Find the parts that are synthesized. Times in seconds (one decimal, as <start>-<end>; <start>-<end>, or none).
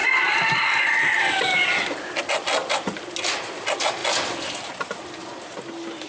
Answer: 0.0-2.2